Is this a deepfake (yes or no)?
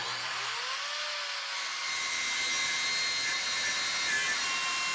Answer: no